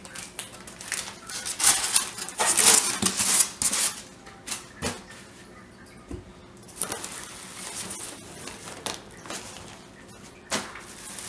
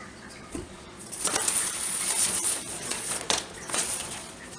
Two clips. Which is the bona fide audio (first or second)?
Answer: first